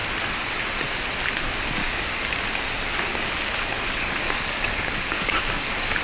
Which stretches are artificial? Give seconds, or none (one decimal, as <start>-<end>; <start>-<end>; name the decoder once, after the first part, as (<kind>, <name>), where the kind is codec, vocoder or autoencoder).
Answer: 1.8-2.4 (codec, DAC); 3.1-6.0